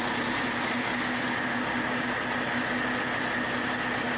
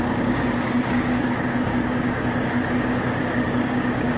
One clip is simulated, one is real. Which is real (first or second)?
first